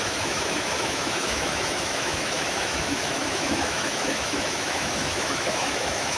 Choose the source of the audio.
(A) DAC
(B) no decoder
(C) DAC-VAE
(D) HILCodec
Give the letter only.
C